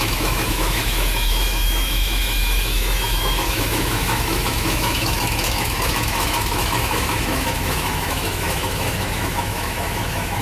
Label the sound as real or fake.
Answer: fake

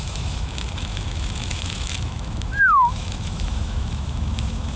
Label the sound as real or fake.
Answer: fake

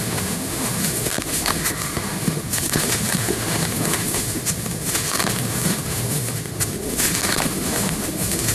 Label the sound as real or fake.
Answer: fake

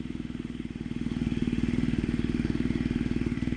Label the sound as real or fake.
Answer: fake